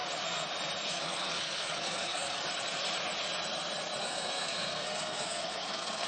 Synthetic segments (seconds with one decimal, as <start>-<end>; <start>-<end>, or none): 0.9-2.4; 4.0-6.1